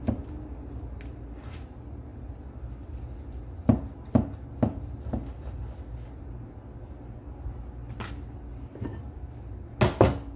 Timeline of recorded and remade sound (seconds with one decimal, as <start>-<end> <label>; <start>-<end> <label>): 0.0-8.9 recorded; 8.9-9.7 remade; 9.7-10.4 recorded